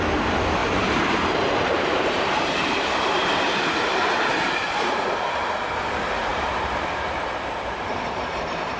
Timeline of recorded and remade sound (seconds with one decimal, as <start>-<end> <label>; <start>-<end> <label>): 0.0-0.6 recorded; 0.6-5.1 remade; 5.1-6.3 recorded; 6.3-8.8 remade